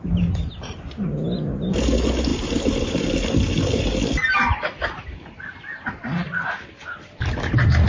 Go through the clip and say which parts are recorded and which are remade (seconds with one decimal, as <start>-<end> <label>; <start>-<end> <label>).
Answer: 0.0-7.9 recorded